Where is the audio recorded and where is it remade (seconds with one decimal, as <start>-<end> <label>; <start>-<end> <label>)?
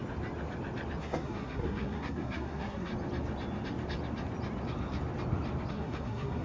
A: 0.0-1.0 recorded; 1.0-2.9 remade; 2.9-5.7 recorded; 5.7-6.4 remade